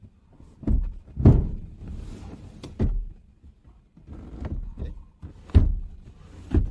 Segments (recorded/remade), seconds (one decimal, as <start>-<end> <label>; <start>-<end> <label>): 0.0-6.7 recorded